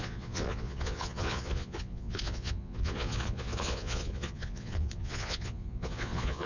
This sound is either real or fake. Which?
fake